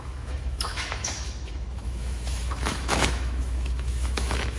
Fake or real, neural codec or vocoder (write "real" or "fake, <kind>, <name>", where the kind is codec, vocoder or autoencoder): fake, autoencoder, DAC-VAE